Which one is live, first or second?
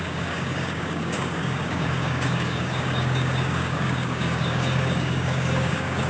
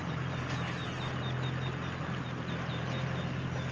second